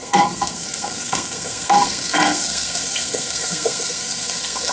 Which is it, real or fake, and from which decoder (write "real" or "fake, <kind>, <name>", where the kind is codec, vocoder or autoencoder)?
fake, codec, SNAC